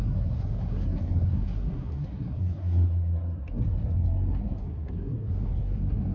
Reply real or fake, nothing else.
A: fake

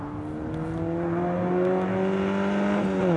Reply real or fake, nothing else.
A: real